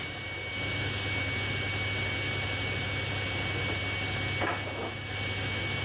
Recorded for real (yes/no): yes